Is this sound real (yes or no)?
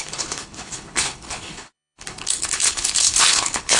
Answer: no